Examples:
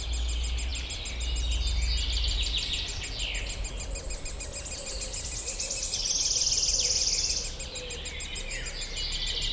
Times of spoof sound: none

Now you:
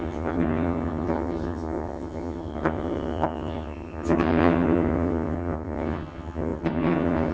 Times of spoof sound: 0.0-7.3 (vocoder, HiFi-GAN)